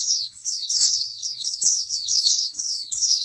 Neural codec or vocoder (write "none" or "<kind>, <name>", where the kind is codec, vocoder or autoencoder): codec, SNAC